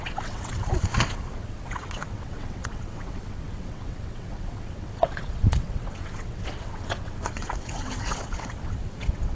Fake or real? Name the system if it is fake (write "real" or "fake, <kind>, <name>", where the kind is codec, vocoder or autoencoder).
fake, vocoder, WaveNeXt